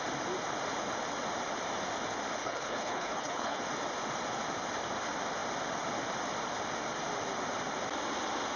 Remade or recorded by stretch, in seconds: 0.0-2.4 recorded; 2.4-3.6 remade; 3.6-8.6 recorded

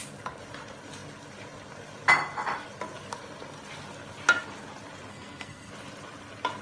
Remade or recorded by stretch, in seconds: 0.0-5.1 recorded; 5.1-5.7 remade; 5.7-6.6 recorded